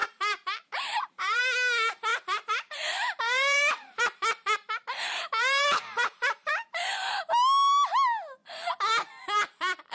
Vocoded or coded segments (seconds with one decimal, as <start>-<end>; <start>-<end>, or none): 0.0-1.4; 2.1-7.3

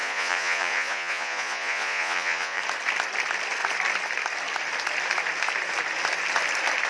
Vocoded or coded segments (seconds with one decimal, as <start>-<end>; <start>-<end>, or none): 0.0-2.6

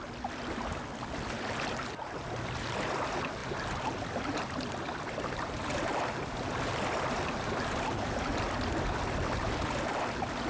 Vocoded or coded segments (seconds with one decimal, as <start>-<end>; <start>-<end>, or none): none

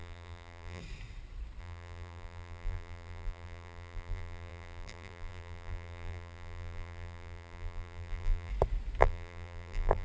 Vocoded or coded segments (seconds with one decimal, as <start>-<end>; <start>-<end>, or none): 0.0-0.8; 1.6-8.5; 9.0-10.0

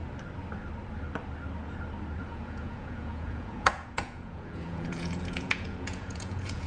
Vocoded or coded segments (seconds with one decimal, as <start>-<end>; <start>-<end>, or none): 2.2-6.7